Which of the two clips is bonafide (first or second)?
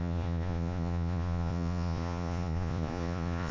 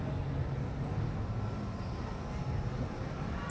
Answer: second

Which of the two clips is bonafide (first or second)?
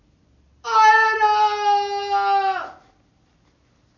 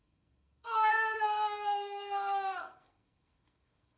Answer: first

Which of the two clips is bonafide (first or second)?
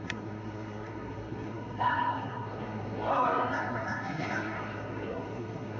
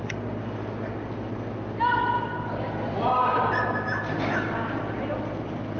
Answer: second